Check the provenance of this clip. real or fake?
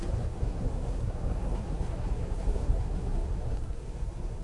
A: fake